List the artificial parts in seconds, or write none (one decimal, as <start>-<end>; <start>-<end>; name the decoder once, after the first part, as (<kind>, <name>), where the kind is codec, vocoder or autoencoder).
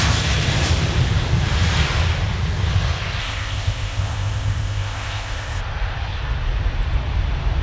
3.2-5.6 (codec, ZipCodec)